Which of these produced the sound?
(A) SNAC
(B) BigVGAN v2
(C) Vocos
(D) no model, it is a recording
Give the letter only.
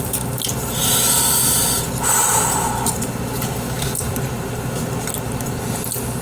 D